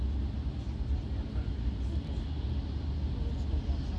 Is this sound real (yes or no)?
yes